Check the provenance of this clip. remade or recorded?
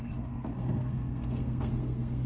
remade